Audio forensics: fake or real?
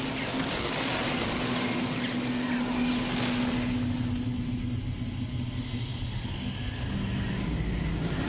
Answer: real